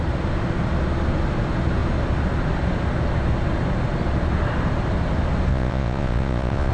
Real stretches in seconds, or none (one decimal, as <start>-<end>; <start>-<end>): 0.0-5.5